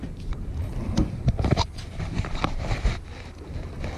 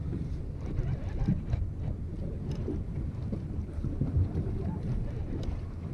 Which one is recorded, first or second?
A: first